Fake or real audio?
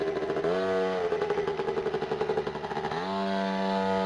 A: real